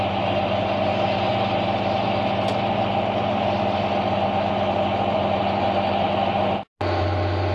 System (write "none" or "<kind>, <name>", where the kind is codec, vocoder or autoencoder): none